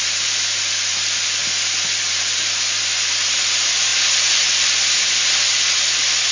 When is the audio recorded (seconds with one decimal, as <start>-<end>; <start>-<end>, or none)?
1.4-3.1